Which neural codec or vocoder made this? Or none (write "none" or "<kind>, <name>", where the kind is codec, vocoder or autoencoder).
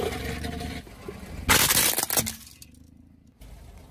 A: none